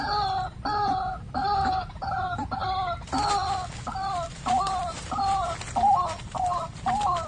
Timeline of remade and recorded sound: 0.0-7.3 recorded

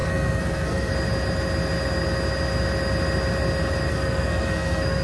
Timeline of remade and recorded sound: 0.0-0.9 remade; 0.9-3.9 recorded; 3.9-5.0 remade

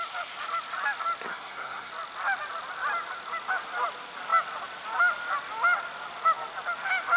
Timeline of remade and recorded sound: 0.0-1.3 recorded; 1.3-1.9 remade; 1.9-7.2 recorded

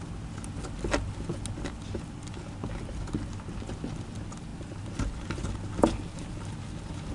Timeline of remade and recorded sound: 0.0-7.1 recorded